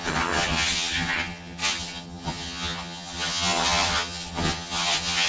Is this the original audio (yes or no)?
no